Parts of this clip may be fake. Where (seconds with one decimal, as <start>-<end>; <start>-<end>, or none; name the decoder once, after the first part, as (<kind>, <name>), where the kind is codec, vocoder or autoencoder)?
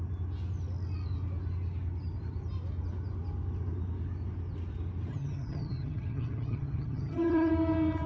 5.1-7.5 (vocoder, HiFi-GAN)